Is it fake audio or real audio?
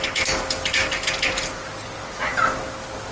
real